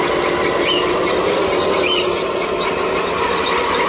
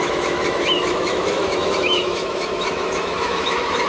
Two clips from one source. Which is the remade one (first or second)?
second